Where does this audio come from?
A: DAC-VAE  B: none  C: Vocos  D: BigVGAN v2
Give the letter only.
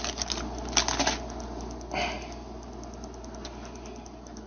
B